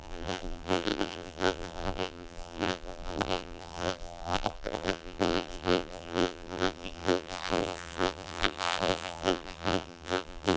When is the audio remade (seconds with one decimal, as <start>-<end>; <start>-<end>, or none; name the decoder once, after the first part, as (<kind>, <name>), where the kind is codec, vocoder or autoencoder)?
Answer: 0.0-10.6 (vocoder, BigVGAN v2)